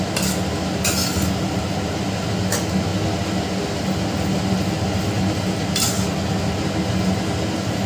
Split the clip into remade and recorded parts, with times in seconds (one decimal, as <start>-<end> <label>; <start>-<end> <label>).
0.0-7.9 recorded